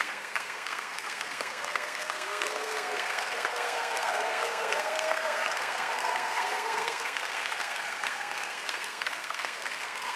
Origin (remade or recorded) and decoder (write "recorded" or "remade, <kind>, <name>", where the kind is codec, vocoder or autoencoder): remade, codec, SNAC